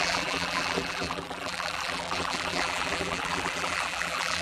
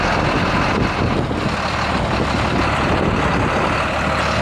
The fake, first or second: first